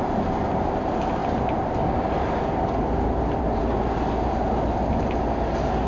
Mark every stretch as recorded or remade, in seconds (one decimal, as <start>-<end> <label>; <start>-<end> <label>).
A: 0.0-1.2 recorded; 1.2-3.6 remade; 3.6-5.9 recorded